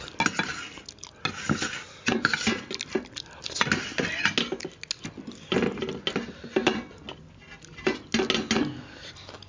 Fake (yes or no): no